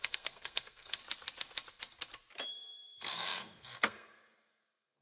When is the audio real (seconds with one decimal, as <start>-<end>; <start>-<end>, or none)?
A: 1.0-2.5